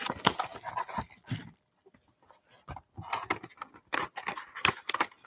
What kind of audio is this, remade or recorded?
recorded